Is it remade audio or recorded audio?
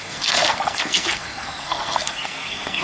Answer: remade